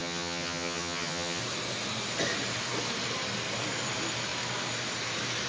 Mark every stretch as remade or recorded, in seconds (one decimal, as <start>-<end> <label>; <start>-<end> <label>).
0.0-1.4 remade; 1.4-5.5 recorded